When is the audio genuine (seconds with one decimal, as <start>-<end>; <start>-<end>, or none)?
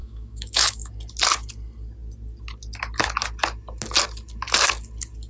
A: 0.9-5.3